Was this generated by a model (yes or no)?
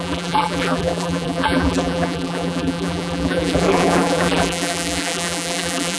yes